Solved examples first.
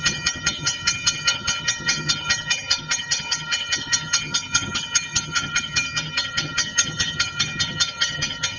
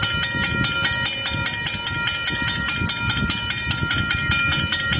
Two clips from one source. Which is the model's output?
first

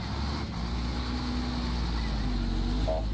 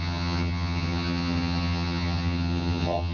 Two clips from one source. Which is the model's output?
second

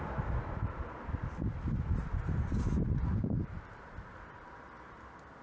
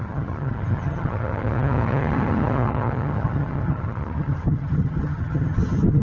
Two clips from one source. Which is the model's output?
second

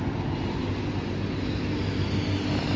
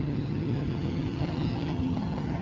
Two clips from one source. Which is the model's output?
second